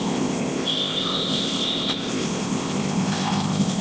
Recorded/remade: remade